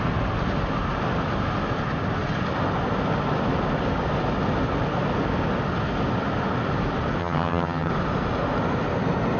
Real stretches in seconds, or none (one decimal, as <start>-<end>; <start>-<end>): 0.0-7.2; 7.9-9.4